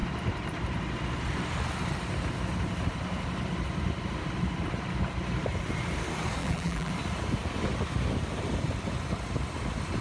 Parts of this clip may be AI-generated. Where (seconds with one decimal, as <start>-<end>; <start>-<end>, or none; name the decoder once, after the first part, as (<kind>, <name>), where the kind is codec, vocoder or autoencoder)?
6.4-6.9 (vocoder, BigVGAN v2)